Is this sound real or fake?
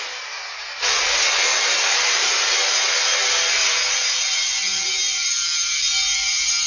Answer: fake